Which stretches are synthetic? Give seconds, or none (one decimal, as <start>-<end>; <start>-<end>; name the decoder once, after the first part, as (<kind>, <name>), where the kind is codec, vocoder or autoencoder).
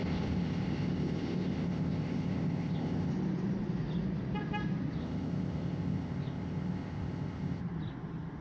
0.0-3.1 (codec, ZipCodec); 5.0-7.6